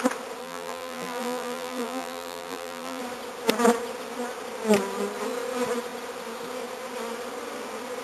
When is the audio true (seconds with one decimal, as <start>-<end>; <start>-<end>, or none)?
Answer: 0.0-0.4; 3.0-8.0